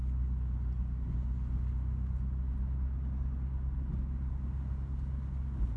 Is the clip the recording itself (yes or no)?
yes